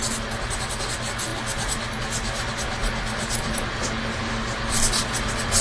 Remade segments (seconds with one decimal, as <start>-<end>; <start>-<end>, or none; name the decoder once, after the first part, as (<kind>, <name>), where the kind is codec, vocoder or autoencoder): none